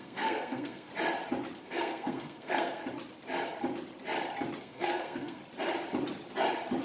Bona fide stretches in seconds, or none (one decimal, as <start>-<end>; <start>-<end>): 0.9-1.6; 2.8-4.6; 5.4-6.8